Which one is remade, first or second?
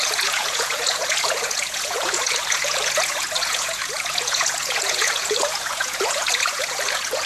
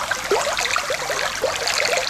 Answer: first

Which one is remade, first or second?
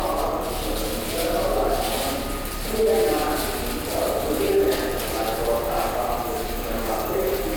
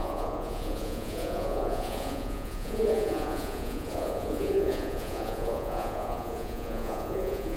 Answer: second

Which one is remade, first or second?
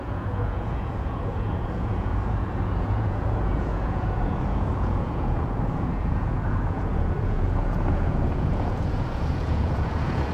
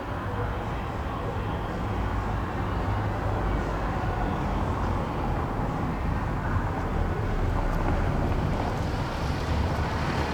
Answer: first